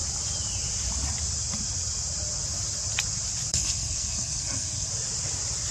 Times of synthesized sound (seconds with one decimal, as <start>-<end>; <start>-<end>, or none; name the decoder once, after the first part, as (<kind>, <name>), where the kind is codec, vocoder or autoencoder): 3.5-4.9 (codec, SNAC)